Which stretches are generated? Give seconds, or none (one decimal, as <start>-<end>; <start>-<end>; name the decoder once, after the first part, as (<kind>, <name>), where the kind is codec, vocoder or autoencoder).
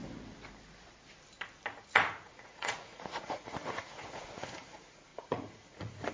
1.8-6.1 (vocoder, Vocos)